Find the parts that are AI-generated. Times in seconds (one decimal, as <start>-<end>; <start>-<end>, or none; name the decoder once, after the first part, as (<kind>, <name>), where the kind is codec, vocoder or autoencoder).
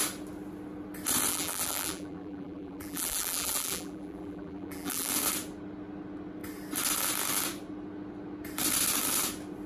1.3-5.1 (vocoder, BigVGAN v2)